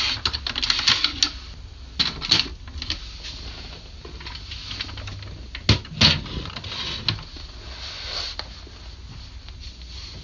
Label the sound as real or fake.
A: real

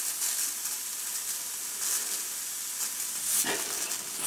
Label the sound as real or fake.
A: real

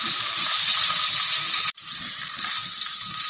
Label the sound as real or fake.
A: fake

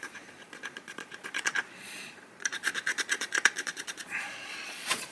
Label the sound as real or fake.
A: fake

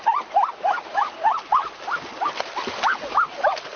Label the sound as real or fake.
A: real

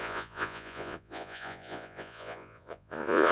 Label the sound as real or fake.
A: fake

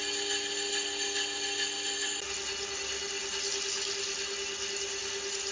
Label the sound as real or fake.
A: real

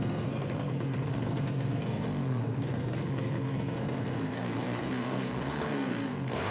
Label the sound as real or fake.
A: fake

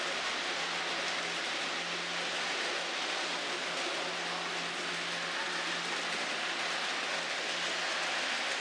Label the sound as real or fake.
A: real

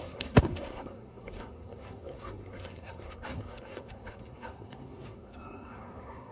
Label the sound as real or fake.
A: fake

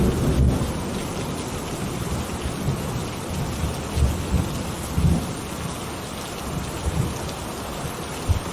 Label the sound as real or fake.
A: real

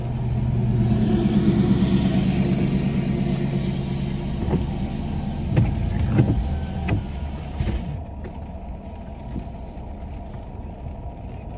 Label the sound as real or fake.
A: real